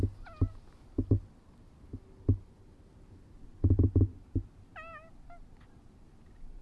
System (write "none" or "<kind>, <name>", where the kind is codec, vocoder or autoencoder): none